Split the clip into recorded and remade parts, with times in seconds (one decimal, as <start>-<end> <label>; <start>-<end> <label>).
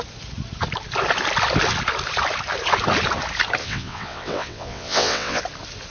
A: 0.0-3.6 recorded; 3.6-5.4 remade; 5.4-5.9 recorded